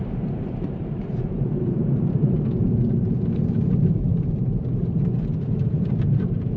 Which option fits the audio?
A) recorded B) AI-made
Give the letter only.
B